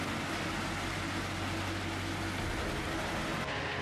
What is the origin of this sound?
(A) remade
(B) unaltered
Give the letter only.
B